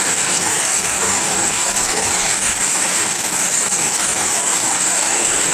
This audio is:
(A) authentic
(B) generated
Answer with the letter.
B